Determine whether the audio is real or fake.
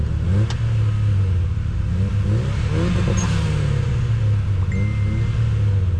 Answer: real